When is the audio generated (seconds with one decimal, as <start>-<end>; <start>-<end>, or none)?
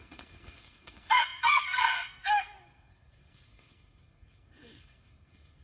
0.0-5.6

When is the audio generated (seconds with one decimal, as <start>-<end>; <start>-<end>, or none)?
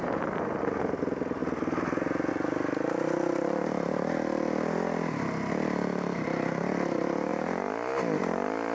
none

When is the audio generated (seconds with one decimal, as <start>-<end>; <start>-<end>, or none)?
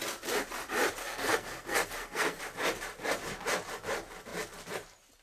1.0-2.4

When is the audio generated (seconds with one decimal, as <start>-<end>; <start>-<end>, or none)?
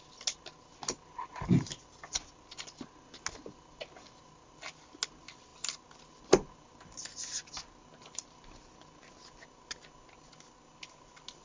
none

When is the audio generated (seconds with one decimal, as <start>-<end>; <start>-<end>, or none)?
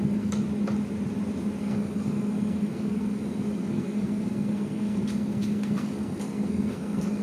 0.0-0.4; 1.6-7.2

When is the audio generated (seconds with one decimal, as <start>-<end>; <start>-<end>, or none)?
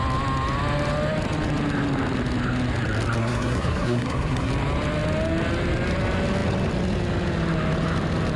3.2-4.5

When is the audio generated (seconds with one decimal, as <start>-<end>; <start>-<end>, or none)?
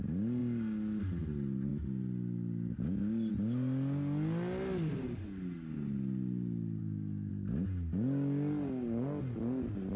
6.8-7.3